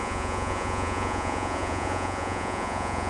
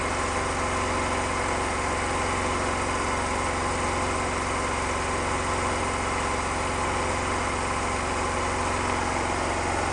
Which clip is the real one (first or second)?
second